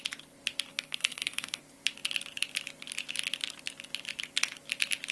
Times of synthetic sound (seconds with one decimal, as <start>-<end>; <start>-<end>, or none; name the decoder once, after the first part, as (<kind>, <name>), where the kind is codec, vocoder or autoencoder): 0.7-1.6 (codec, SNAC)